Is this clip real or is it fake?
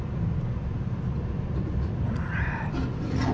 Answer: real